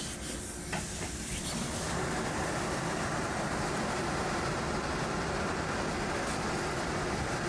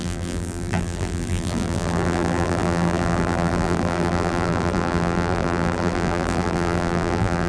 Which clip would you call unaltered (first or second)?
first